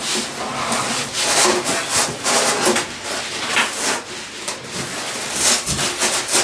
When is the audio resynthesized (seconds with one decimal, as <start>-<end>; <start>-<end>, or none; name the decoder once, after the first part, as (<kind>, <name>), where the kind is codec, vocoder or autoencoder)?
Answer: none